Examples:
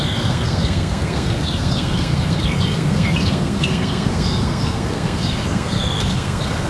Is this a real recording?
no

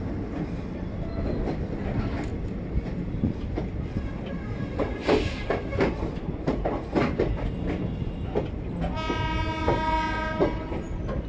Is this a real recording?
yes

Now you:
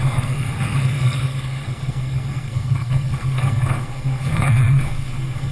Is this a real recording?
no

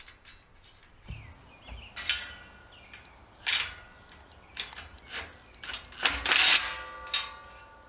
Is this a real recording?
yes